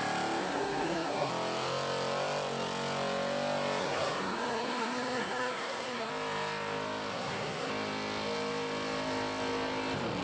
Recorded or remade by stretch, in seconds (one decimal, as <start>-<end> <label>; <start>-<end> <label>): 0.0-0.4 recorded; 0.4-1.3 remade; 1.3-3.8 recorded; 3.8-6.1 remade; 6.1-7.1 recorded; 7.1-7.7 remade; 7.7-10.2 recorded